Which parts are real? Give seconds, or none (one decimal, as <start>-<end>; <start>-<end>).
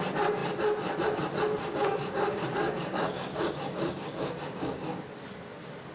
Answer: 0.0-1.5; 5.0-5.9